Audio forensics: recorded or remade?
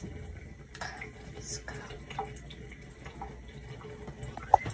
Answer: recorded